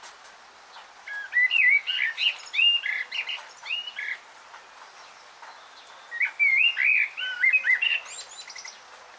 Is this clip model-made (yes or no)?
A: no